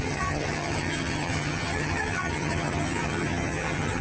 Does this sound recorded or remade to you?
remade